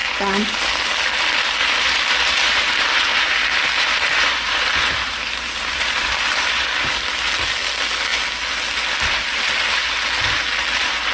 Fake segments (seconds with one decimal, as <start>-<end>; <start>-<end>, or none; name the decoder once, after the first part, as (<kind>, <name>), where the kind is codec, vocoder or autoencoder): 0.0-0.7 (vocoder, BigVGAN v2); 1.6-6.7